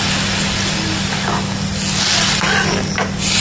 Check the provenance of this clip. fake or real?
real